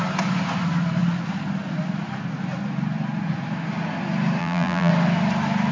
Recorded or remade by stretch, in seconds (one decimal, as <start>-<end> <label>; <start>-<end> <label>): 0.0-4.4 recorded; 4.4-4.9 remade; 4.9-5.7 recorded